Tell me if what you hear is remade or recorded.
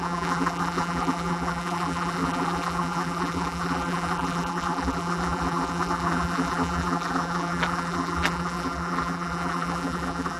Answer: remade